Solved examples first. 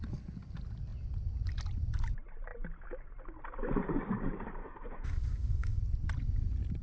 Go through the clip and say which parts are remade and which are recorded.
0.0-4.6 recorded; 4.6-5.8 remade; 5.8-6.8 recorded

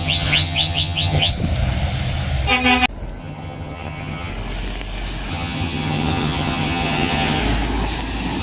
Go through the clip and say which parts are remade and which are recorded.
0.0-1.3 remade; 1.3-3.2 recorded; 3.2-4.3 remade; 4.3-5.3 recorded; 5.3-7.4 remade; 7.4-8.4 recorded